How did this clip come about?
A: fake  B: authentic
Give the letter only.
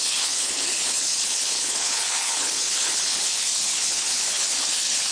A